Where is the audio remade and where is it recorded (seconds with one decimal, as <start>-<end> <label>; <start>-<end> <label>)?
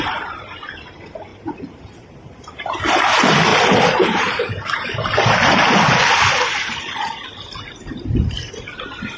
0.0-1.3 recorded; 1.3-2.8 remade; 2.8-3.5 recorded; 3.5-8.3 remade; 8.3-9.2 recorded